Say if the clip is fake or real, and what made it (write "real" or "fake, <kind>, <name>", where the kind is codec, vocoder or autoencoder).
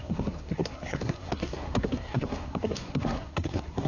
fake, codec, SNAC